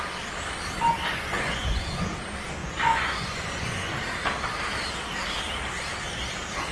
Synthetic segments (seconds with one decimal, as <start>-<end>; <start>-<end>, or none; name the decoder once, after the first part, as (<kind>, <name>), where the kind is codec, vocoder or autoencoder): 1.1-2.0 (vocoder, Vocos); 2.6-3.9